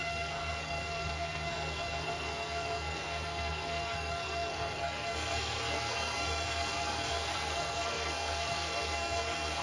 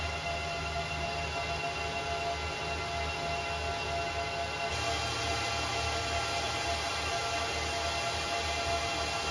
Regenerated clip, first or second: first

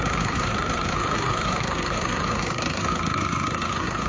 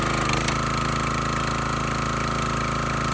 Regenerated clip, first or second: first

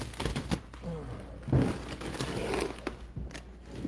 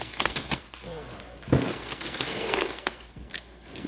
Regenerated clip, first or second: second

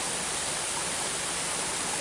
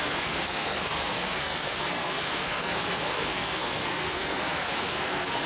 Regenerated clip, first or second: second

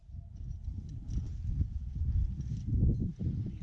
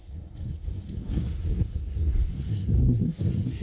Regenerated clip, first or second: second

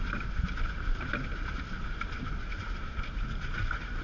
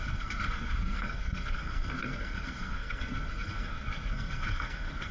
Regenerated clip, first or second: second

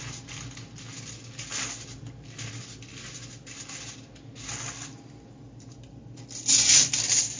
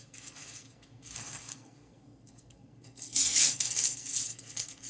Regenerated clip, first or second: second